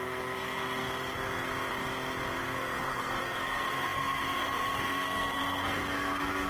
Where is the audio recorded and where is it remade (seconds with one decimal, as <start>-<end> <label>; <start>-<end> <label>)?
0.0-1.5 remade; 1.5-2.4 recorded; 2.4-6.5 remade